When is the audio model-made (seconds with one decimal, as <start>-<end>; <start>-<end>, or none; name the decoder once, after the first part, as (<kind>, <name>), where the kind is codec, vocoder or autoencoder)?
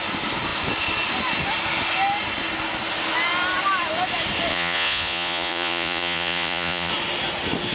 4.5-6.9 (vocoder, Vocos)